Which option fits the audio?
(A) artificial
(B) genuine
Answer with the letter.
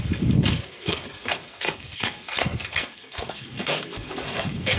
A